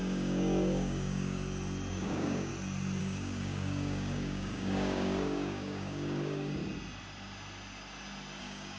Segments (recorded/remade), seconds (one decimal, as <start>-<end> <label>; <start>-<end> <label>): 0.0-1.4 remade; 1.4-1.9 recorded; 1.9-2.5 remade; 2.5-3.0 recorded; 3.0-6.6 remade; 6.6-8.4 recorded; 8.4-8.8 remade